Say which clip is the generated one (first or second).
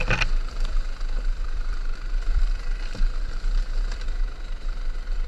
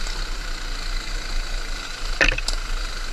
first